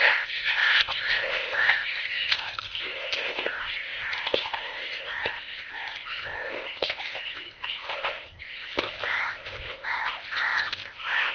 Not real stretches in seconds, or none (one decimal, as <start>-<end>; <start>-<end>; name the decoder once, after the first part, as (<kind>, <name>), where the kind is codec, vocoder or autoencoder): 0.0-11.3 (codec, ZipCodec)